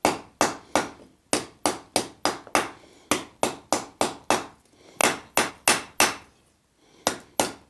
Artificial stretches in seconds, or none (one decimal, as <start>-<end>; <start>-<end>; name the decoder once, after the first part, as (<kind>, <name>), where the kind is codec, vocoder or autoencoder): none